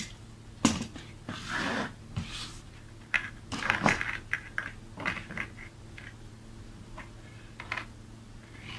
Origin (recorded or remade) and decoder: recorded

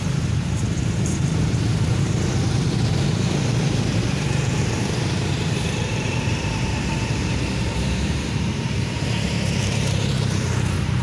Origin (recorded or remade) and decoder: remade, vocoder, BigVGAN v2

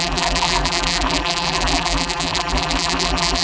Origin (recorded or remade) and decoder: remade, vocoder, BigVGAN v2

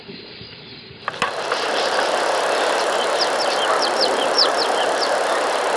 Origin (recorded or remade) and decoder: remade, vocoder, BigVGAN v2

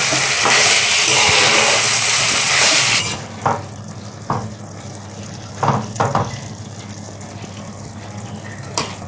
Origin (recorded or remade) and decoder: recorded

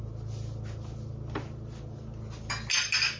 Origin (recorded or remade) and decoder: recorded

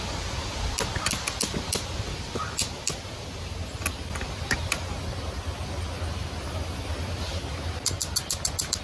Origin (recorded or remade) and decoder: recorded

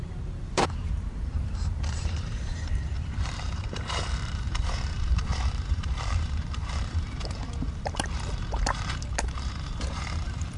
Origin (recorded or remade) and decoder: remade, vocoder, BigVGAN v2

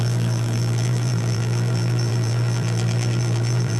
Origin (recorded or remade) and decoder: remade, vocoder, BigVGAN v2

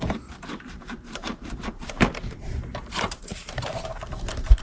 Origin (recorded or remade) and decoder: remade, vocoder, BigVGAN v2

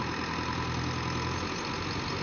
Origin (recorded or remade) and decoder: recorded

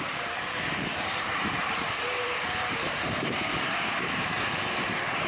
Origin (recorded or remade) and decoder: remade, vocoder, BigVGAN v2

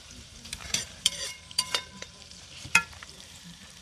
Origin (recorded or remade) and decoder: remade, vocoder, BigVGAN v2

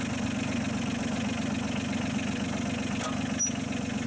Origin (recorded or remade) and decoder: recorded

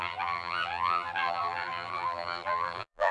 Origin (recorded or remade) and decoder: remade, vocoder, BigVGAN v2